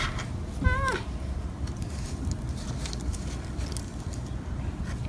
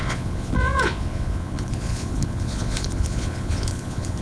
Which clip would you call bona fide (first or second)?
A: first